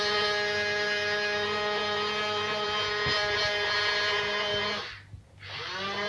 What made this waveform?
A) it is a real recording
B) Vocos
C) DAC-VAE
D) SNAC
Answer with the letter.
A